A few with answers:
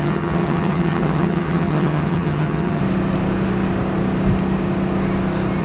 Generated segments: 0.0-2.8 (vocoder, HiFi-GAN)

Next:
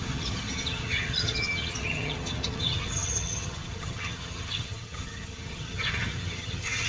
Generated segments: 0.0-6.9 (vocoder, HiFi-GAN)

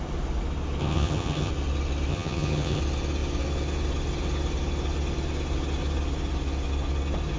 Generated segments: 0.8-1.5 (vocoder, HiFi-GAN); 2.1-2.8

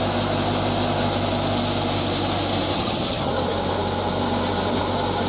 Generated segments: 2.7-3.3 (vocoder, HiFi-GAN)

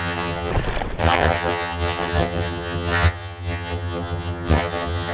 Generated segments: 0.0-0.5 (vocoder, HiFi-GAN); 1.0-5.1